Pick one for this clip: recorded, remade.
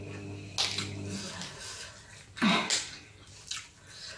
recorded